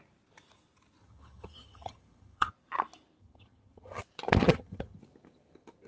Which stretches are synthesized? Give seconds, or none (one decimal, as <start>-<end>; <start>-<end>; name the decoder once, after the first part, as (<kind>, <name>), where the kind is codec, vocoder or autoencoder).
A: 1.0-2.5 (vocoder, HiFi-GAN); 3.2-4.0; 4.4-5.0

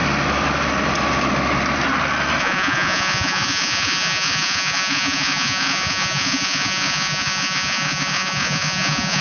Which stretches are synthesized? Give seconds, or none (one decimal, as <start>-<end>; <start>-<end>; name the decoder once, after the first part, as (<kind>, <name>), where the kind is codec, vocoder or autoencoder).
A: 2.4-9.2 (vocoder, Vocos)

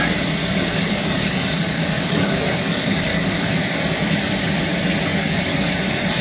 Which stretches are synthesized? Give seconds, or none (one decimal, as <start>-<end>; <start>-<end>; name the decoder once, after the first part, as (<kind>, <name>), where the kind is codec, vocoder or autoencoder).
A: 0.4-3.5 (codec, DAC); 5.1-5.7

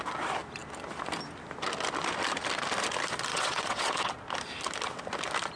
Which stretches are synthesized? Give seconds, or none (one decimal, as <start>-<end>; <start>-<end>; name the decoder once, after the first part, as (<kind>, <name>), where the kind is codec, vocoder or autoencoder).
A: 3.3-4.1 (vocoder, WaveNeXt)